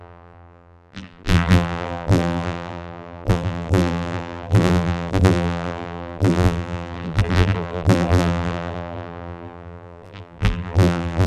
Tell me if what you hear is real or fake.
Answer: fake